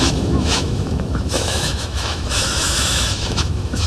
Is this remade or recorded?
remade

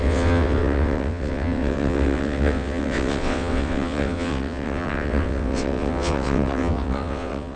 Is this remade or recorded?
remade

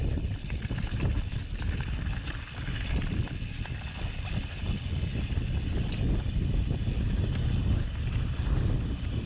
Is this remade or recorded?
recorded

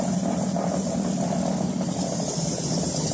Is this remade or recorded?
recorded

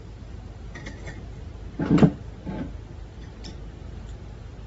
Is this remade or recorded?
recorded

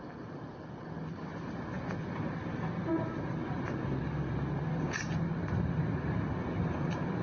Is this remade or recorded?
recorded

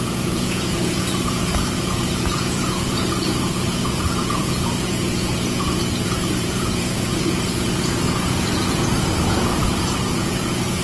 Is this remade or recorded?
remade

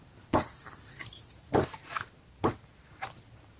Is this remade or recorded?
remade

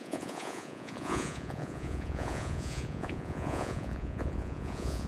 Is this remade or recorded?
remade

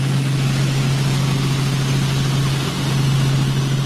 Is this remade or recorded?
recorded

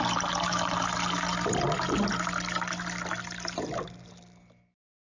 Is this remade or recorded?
recorded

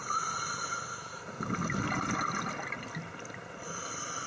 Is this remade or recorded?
recorded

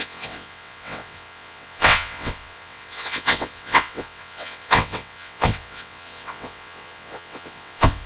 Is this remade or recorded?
remade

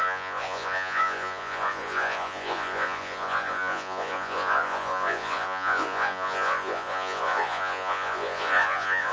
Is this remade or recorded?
remade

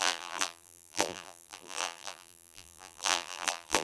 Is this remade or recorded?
remade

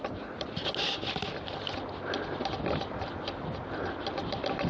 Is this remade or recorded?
recorded